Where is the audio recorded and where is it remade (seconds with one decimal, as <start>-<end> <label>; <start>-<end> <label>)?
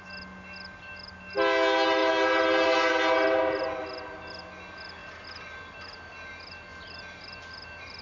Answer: 0.0-8.0 recorded